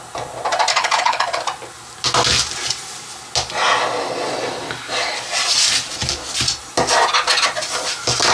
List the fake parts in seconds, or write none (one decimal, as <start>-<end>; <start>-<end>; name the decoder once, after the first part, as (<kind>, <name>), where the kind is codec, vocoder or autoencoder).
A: 0.7-1.4 (codec, HILCodec)